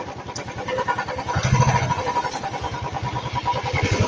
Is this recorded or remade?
recorded